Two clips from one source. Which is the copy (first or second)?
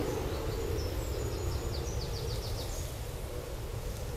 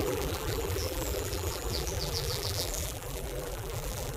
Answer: second